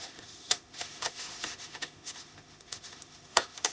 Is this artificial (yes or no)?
yes